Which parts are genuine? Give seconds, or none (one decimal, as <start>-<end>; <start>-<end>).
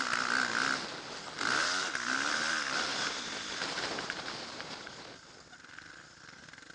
0.0-2.9; 5.0-6.7